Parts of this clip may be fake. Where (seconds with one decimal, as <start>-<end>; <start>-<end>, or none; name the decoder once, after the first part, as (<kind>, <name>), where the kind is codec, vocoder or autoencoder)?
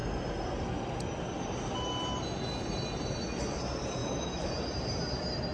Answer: 4.0-4.5 (autoencoder, DAC-VAE)